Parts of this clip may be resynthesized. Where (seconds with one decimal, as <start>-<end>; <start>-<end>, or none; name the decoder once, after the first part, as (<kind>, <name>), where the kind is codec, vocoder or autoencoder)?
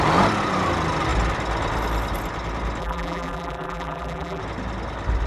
2.8-4.4 (vocoder, BigVGAN v2)